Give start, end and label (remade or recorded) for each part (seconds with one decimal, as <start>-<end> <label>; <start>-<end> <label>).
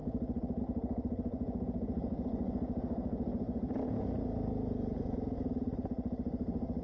0.0-1.3 recorded; 1.3-5.4 remade; 5.4-6.8 recorded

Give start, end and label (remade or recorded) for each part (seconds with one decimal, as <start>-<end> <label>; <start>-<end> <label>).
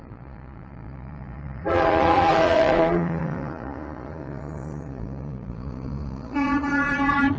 0.0-7.4 remade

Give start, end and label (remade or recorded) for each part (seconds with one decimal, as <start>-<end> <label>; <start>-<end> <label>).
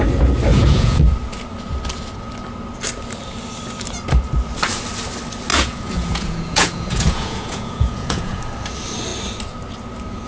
0.0-0.5 recorded; 0.5-1.0 remade; 1.0-5.5 recorded; 5.5-8.4 remade; 8.4-10.3 recorded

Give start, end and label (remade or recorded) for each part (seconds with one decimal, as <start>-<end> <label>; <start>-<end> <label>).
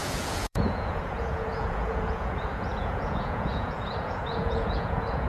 0.0-5.3 remade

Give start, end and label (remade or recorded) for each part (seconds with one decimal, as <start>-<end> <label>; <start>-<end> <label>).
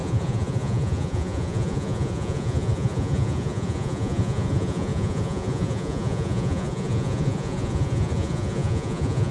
0.0-9.3 remade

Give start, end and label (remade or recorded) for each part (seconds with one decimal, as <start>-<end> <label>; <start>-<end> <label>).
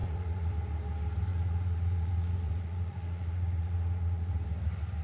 0.0-0.5 remade; 0.5-1.3 recorded; 1.3-4.3 remade; 4.3-5.0 recorded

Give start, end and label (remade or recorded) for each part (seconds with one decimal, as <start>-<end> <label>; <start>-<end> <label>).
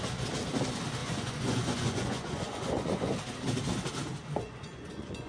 0.0-1.0 recorded; 1.0-3.1 remade; 3.1-4.2 recorded; 4.2-5.3 remade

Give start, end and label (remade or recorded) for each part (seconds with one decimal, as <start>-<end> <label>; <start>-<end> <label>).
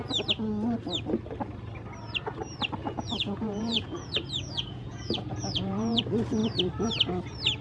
0.0-2.8 recorded; 2.8-6.0 remade; 6.0-7.6 recorded